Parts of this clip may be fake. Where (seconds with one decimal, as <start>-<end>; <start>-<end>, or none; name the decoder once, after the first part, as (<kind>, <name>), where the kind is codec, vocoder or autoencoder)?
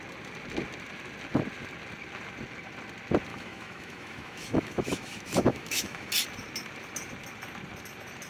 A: 3.3-6.1 (autoencoder, DAC-VAE)